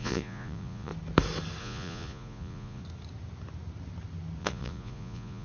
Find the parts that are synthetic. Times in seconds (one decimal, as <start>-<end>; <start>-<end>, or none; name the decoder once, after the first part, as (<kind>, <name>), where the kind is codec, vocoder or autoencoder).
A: 0.0-0.9 (vocoder, Vocos); 1.6-2.8; 4.4-5.4